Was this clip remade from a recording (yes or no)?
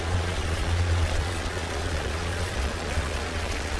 yes